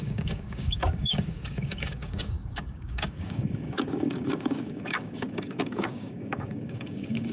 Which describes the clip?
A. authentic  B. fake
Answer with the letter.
B